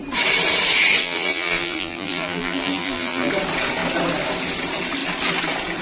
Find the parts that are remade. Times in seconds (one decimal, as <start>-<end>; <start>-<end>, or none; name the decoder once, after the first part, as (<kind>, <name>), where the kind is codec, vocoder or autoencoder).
1.0-3.3 (vocoder, BigVGAN v2)